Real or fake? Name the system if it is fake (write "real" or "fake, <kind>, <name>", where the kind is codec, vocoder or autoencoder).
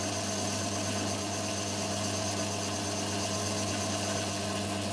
real